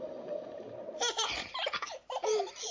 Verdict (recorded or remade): recorded